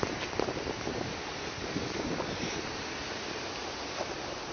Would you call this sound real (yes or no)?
yes